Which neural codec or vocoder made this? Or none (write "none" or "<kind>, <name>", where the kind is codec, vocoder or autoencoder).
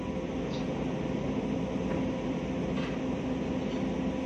none